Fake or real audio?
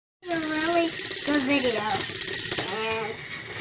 real